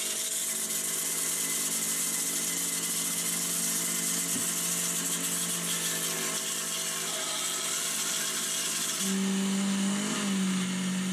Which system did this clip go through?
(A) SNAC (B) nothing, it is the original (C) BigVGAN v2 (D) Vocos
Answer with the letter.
B